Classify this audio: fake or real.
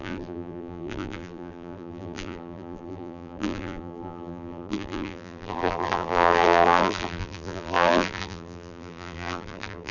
fake